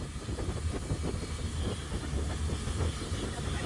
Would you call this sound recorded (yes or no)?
yes